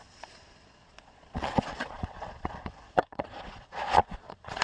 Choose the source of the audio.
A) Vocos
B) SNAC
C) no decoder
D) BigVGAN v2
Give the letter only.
A